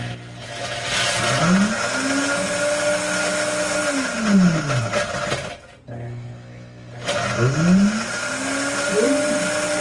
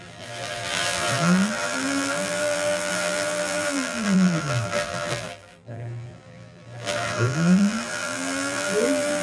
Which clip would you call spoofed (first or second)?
second